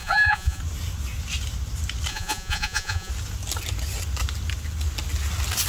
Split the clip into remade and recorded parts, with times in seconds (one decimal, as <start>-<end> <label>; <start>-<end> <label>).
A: 0.0-0.6 remade; 0.6-2.1 recorded; 2.1-3.1 remade; 3.1-5.7 recorded